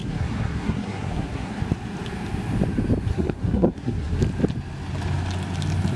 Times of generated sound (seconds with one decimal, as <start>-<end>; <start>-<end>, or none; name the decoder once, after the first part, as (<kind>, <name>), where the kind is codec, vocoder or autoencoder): 0.0-1.6 (codec, SNAC); 3.1-4.2